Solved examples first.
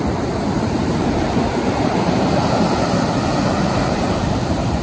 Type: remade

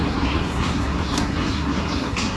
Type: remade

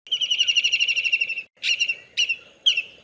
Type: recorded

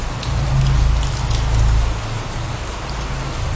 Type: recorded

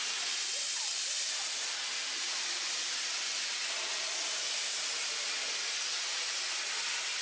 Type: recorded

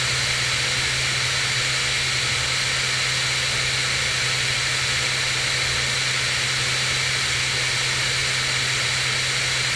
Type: recorded